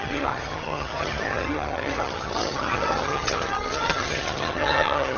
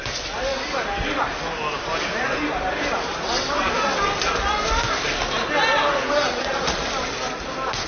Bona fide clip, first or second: second